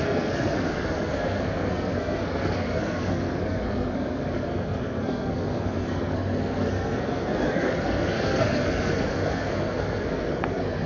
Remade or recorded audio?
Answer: remade